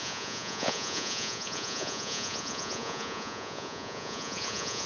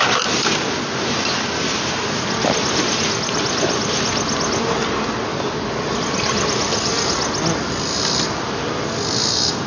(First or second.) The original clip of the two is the second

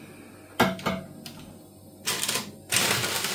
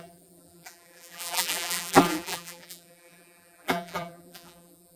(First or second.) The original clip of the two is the first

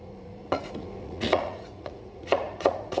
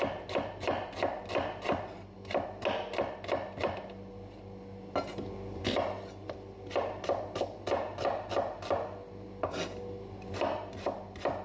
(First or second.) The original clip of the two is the second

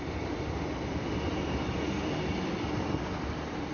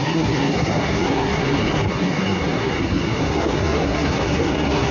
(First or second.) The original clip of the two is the first